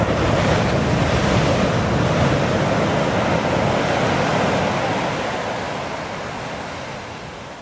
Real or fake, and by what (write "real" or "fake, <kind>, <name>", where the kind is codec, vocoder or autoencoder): real